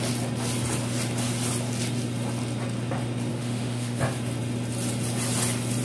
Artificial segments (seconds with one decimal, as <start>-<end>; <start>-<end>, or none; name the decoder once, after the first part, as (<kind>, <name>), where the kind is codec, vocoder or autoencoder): 3.3-4.0 (autoencoder, DAC-VAE)